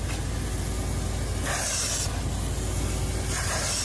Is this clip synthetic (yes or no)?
no